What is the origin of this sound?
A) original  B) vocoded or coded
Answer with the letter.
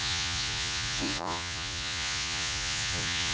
B